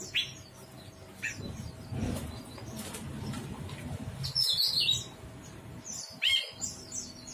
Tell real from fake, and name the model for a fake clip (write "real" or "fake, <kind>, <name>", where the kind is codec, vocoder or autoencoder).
real